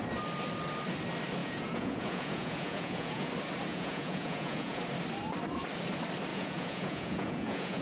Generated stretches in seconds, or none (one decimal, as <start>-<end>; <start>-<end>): 1.4-3.3; 3.7-4.8; 6.3-7.8